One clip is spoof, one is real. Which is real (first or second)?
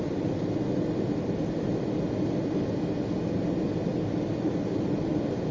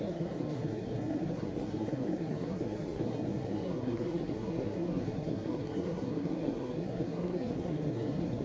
first